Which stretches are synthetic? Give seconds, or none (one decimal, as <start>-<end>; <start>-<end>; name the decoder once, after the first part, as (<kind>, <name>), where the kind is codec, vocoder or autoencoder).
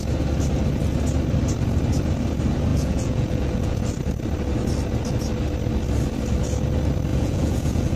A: 2.7-3.8 (vocoder, Vocos); 7.1-8.0